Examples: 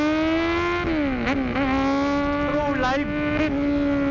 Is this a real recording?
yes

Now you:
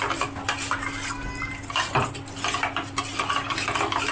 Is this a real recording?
yes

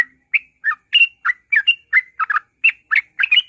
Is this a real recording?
yes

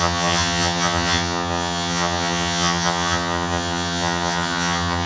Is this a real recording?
no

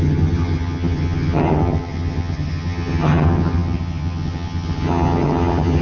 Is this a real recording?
no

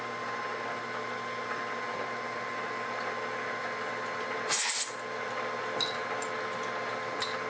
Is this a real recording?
yes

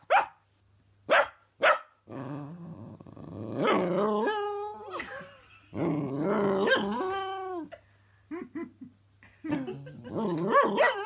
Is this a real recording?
yes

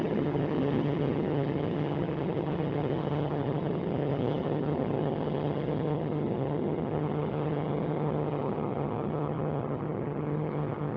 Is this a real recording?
no